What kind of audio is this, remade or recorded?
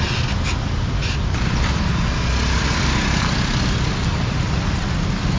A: recorded